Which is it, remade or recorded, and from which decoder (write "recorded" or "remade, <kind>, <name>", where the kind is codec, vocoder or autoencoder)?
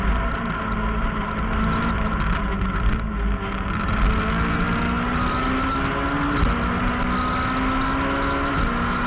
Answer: recorded